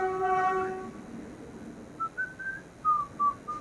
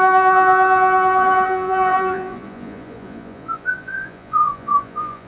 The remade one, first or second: second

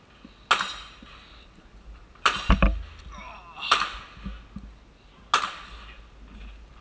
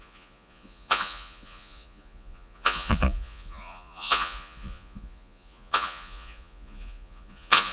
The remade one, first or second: second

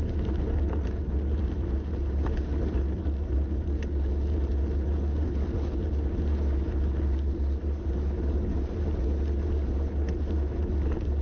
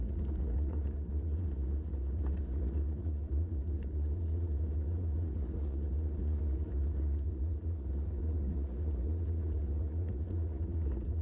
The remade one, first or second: second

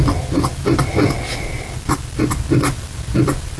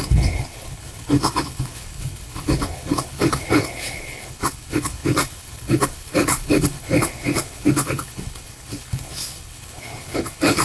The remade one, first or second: second